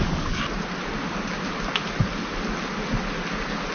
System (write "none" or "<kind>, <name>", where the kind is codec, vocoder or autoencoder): none